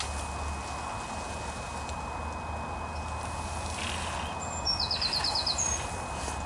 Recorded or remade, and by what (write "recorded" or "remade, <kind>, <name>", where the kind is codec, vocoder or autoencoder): recorded